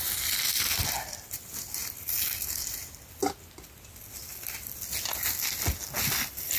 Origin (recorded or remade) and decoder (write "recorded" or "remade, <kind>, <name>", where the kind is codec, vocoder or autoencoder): recorded